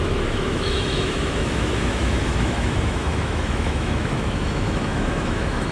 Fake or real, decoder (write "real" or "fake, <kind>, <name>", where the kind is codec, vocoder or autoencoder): fake, autoencoder, DAC-VAE